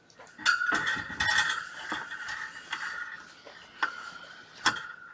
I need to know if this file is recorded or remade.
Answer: recorded